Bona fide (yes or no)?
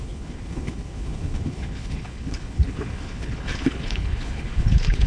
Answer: no